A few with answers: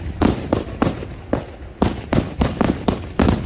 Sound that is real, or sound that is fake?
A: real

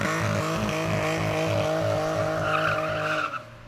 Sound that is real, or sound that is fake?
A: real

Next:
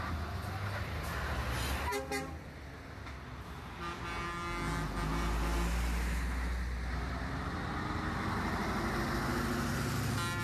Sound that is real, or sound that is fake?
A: real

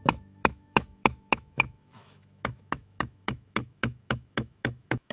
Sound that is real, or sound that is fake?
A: fake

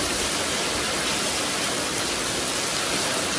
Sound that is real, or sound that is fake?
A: real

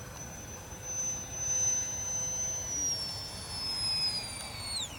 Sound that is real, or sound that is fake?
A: real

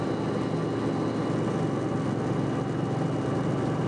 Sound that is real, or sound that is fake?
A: real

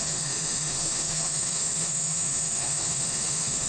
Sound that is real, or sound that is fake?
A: fake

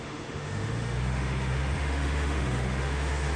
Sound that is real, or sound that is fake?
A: fake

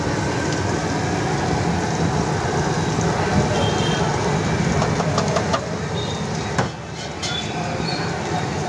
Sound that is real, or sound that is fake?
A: real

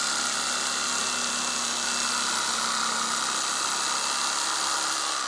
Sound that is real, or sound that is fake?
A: real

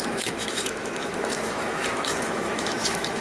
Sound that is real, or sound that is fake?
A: fake